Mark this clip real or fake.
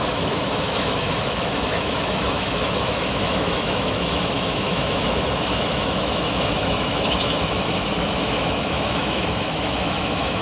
fake